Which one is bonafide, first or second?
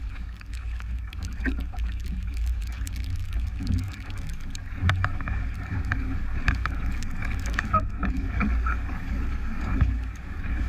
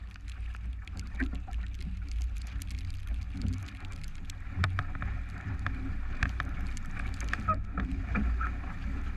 second